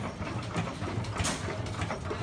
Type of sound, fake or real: real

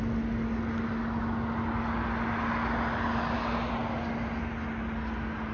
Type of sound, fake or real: real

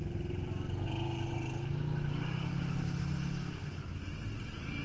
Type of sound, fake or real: real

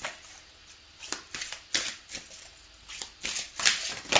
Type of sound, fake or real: real